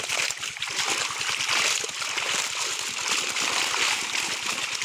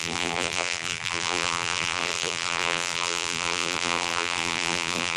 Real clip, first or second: first